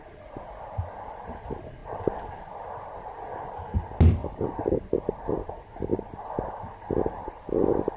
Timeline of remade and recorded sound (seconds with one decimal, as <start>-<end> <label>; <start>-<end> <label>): 0.0-8.0 recorded